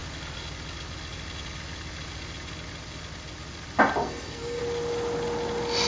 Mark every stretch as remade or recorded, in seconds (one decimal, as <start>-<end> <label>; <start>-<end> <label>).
0.0-4.0 recorded; 4.0-4.6 remade; 4.6-5.9 recorded